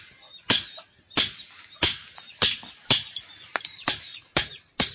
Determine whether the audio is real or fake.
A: real